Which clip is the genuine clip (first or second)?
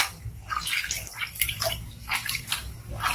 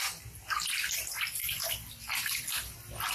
second